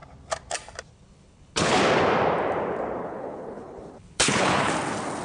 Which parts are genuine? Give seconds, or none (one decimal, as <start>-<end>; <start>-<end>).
0.0-0.9; 1.8-3.0; 4.7-5.2